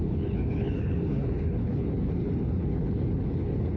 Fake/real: fake